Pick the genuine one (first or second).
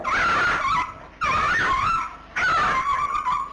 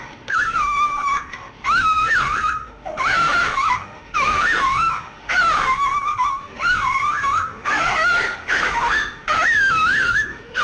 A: first